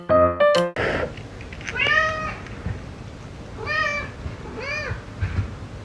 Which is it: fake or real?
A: real